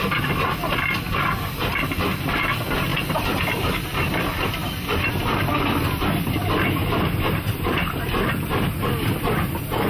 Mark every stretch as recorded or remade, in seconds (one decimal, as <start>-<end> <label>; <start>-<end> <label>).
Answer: 0.0-2.9 recorded; 2.9-3.7 remade; 3.7-4.6 recorded; 4.6-5.1 remade; 5.1-6.8 recorded; 6.8-8.3 remade; 8.3-9.9 recorded